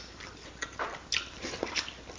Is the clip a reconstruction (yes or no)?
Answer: no